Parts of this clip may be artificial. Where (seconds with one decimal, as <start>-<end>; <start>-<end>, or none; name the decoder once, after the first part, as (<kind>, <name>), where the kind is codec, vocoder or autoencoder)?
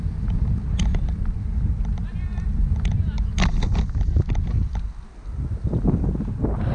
none